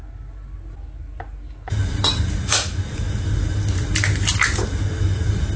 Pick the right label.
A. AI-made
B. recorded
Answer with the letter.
B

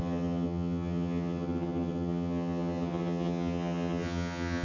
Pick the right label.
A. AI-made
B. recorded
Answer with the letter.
A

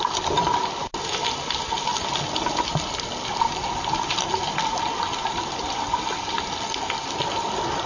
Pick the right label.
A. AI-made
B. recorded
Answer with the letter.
B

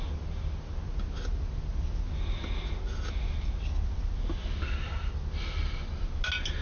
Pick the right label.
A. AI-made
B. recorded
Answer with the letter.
B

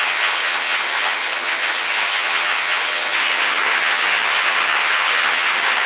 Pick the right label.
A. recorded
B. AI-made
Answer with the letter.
B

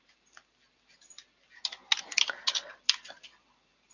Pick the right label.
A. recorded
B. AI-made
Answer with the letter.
A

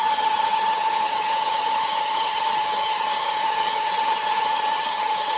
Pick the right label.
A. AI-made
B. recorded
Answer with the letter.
A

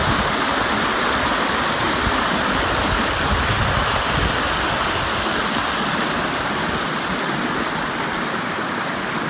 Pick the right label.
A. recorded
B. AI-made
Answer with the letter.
A